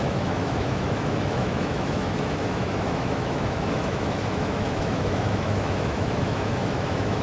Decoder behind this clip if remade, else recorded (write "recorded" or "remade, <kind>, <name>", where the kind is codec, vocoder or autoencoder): remade, autoencoder, DAC-VAE